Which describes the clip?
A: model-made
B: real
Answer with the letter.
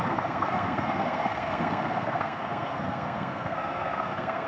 A